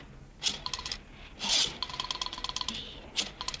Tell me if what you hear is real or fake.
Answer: real